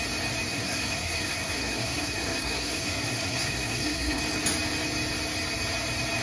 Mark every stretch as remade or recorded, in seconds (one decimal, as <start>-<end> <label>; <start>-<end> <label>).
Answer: 0.0-0.5 recorded; 0.5-4.2 remade; 4.2-6.2 recorded